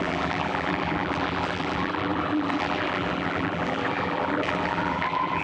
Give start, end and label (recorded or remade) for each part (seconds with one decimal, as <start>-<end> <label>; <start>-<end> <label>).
0.0-5.4 remade

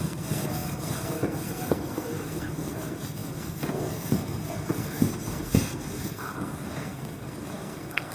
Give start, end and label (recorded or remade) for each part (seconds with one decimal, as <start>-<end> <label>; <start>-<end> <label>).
0.0-8.1 remade

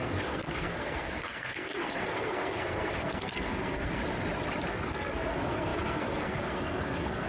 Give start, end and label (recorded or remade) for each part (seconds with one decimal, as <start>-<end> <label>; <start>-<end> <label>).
0.0-4.0 remade; 4.0-4.7 recorded; 4.7-7.3 remade

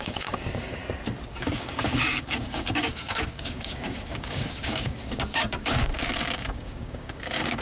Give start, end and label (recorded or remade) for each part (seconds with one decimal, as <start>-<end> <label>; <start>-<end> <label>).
0.0-0.8 remade; 0.8-1.4 recorded; 1.4-7.6 remade

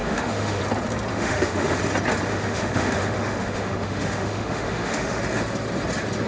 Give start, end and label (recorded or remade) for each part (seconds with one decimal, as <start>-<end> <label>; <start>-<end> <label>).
0.0-0.6 remade; 0.6-1.1 recorded; 1.1-1.8 remade; 1.8-2.3 recorded; 2.3-5.2 remade; 5.2-6.3 recorded

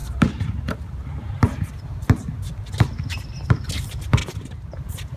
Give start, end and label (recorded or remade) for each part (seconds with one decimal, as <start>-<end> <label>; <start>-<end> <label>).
0.0-1.7 remade; 1.7-4.2 recorded; 4.2-4.8 remade; 4.8-5.2 recorded